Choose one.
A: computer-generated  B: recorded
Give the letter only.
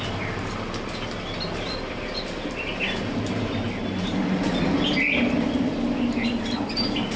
B